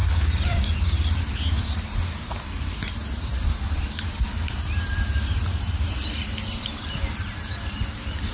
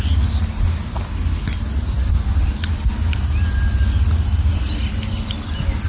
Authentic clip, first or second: second